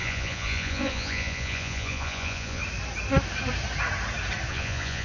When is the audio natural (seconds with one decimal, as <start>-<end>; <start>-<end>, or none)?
2.6-4.5